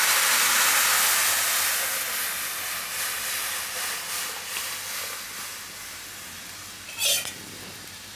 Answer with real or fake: real